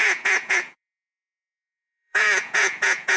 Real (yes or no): no